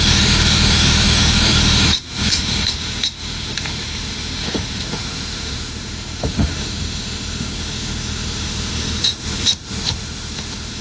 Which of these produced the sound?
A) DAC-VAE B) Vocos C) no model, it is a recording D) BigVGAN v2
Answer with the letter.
A